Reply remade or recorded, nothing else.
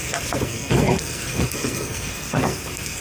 remade